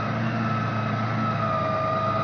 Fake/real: real